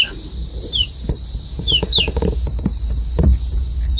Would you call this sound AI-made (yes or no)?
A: yes